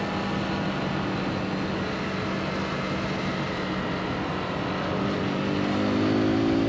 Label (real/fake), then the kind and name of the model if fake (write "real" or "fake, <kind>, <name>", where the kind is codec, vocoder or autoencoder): real